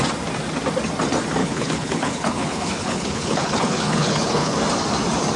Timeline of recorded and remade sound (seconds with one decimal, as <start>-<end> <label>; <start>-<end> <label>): 0.0-1.4 recorded; 1.4-4.6 remade; 4.6-5.4 recorded